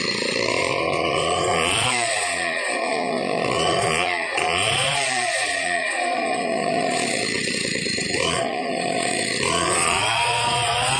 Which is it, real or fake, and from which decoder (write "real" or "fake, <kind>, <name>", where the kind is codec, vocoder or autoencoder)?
fake, vocoder, Vocos